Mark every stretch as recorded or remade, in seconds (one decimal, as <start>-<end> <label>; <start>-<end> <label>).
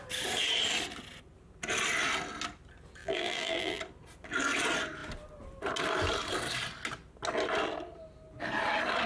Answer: 0.0-3.0 recorded; 3.0-3.8 remade; 3.8-9.1 recorded